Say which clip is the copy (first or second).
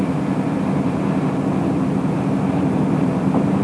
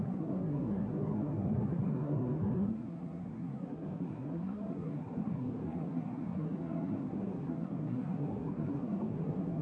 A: second